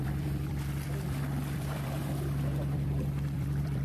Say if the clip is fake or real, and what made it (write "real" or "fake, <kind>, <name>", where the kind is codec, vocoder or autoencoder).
fake, vocoder, BigVGAN v2